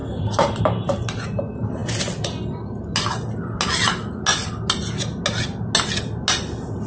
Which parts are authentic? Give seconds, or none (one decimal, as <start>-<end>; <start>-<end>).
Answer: 0.0-6.9